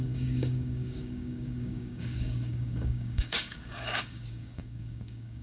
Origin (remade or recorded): remade